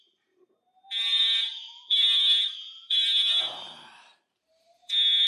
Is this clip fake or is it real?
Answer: fake